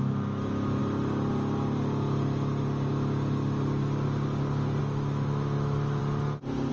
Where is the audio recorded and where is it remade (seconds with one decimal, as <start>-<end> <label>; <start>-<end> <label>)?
0.0-0.8 remade; 0.8-4.8 recorded; 4.8-6.0 remade; 6.0-6.7 recorded

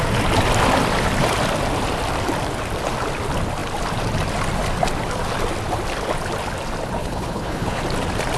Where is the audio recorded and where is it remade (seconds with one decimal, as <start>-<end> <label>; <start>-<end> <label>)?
0.0-7.0 recorded; 7.0-7.8 remade; 7.8-8.4 recorded

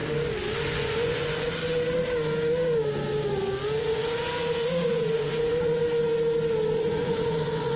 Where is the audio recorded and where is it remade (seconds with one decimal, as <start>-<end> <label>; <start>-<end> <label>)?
0.0-0.7 recorded; 0.7-1.6 remade; 1.6-3.8 recorded; 3.8-5.8 remade; 5.8-6.8 recorded; 6.8-7.8 remade

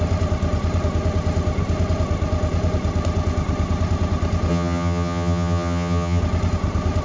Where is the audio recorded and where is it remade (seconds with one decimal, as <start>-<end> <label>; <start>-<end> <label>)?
0.0-4.5 recorded; 4.5-6.2 remade; 6.2-7.0 recorded

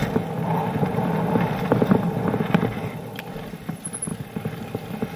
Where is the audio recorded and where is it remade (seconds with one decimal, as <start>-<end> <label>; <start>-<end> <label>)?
0.0-0.5 recorded; 0.5-1.8 remade; 1.8-4.1 recorded; 4.1-5.2 remade

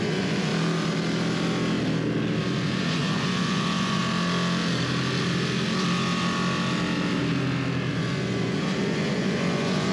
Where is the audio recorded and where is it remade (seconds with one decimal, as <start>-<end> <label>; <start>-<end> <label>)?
0.0-0.5 remade; 0.5-2.4 recorded; 2.4-4.0 remade; 4.0-7.9 recorded; 7.9-9.9 remade

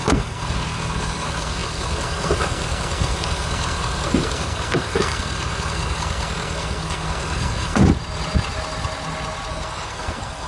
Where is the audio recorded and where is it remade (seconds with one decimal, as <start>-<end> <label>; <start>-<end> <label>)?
0.0-7.8 remade; 7.8-9.5 recorded; 9.5-10.5 remade

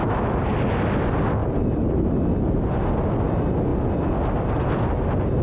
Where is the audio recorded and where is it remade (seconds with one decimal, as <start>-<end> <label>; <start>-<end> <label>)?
0.0-1.4 recorded; 1.4-2.7 remade; 2.7-5.4 recorded